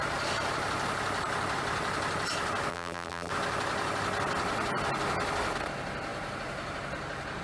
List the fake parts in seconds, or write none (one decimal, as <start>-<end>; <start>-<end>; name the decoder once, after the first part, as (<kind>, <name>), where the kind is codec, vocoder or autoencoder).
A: 2.7-3.3 (vocoder, BigVGAN v2)

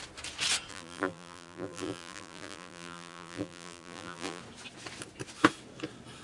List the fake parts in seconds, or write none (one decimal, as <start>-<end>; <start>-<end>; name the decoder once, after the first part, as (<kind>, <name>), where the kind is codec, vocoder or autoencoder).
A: 0.7-4.4 (vocoder, BigVGAN v2)

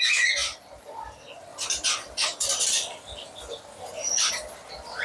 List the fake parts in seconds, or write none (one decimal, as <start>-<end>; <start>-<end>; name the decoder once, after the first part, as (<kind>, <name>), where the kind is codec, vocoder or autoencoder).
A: 0.4-1.0 (vocoder, BigVGAN v2); 1.5-4.3

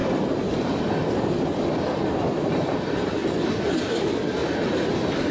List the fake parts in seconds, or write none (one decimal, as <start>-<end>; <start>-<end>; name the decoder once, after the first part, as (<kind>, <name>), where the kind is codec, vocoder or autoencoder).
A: 0.0-0.9 (vocoder, BigVGAN v2); 4.4-5.3

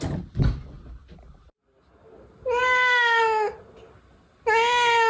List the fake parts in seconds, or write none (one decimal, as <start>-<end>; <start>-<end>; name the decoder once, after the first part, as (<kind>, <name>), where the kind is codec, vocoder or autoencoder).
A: none